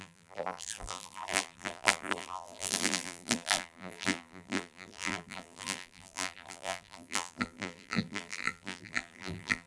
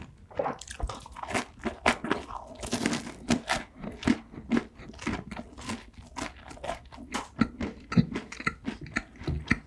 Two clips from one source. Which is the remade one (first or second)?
first